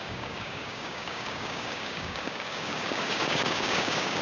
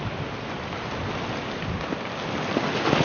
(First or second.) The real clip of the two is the second